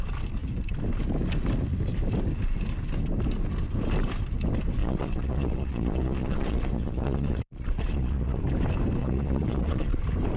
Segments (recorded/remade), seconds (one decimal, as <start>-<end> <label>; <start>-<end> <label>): 0.0-4.8 recorded; 4.8-8.4 remade; 8.4-9.0 recorded; 9.0-10.0 remade; 10.0-10.4 recorded